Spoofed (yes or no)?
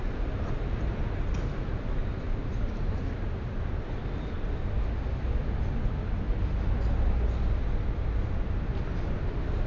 no